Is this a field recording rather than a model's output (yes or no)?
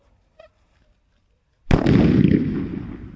yes